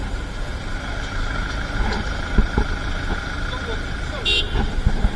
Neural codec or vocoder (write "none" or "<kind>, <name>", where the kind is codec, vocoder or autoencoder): none